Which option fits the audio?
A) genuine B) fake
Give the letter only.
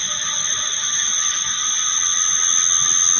A